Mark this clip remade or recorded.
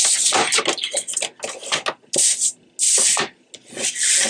recorded